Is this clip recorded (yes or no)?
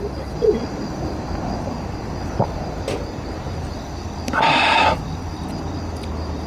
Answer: yes